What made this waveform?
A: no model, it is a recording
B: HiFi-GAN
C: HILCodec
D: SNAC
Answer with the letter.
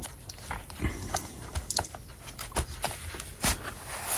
A